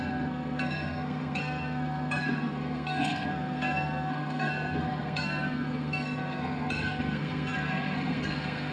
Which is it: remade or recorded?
remade